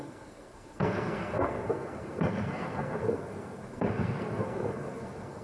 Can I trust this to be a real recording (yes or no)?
no